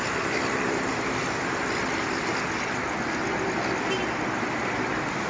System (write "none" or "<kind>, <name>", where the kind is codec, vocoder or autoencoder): none